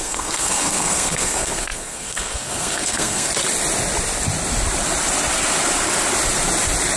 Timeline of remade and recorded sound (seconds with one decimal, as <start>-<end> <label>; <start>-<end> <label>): 0.0-3.3 remade; 3.3-7.0 recorded